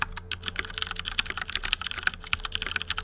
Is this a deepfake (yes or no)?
no